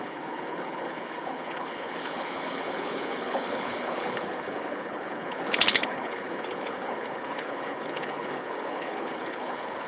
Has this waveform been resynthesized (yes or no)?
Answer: yes